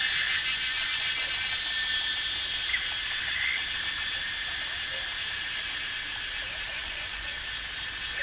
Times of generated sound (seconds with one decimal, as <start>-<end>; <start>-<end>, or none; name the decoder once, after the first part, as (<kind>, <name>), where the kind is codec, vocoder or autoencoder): 0.4-1.3 (vocoder, Vocos); 6.7-7.4